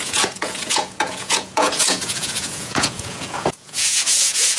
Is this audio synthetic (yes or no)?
yes